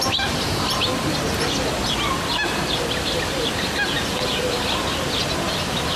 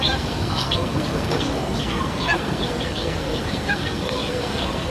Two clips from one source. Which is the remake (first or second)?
second